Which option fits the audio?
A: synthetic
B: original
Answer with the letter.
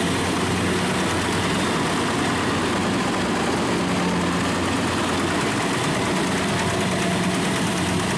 B